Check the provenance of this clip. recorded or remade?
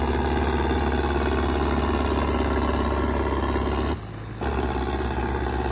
recorded